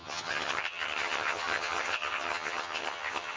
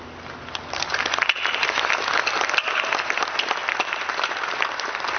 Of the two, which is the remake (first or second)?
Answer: first